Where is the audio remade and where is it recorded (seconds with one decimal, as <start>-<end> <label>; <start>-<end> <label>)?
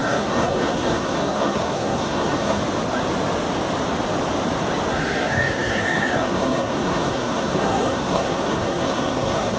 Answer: 0.0-2.6 remade; 2.6-4.9 recorded; 4.9-9.6 remade